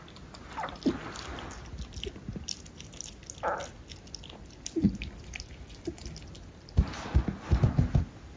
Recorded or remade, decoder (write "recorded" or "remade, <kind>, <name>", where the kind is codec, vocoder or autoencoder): recorded